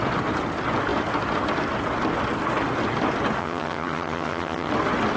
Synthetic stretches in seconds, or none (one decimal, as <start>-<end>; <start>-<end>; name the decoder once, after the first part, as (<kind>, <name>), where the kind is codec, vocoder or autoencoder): 3.4-4.7 (vocoder, HiFi-GAN)